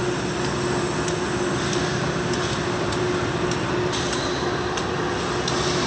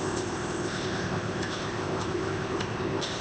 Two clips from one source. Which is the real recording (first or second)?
first